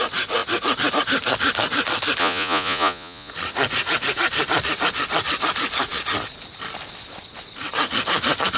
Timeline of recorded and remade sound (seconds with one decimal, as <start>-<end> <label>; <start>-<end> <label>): 0.0-2.2 recorded; 2.2-3.3 remade; 3.3-8.6 recorded